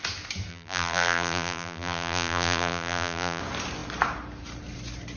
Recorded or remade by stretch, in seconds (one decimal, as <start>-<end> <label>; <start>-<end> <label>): 0.0-0.5 recorded; 0.5-3.4 remade; 3.4-5.2 recorded